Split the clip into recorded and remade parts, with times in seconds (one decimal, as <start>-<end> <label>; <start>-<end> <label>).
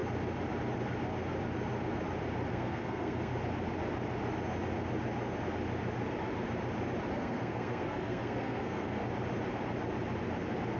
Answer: 0.0-2.5 recorded; 2.5-3.3 remade; 3.3-7.1 recorded; 7.1-9.0 remade; 9.0-10.8 recorded